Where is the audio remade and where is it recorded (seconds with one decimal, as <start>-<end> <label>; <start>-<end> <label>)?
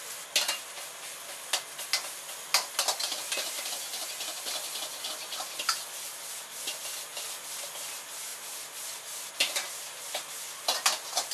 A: 0.0-11.3 recorded